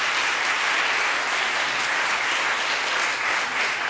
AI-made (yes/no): no